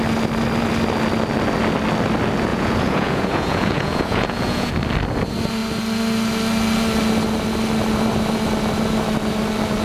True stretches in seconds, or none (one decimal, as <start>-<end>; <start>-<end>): 0.0-2.5; 4.7-9.8